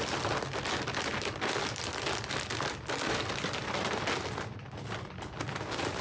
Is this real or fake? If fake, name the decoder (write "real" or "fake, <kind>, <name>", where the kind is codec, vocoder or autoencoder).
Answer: real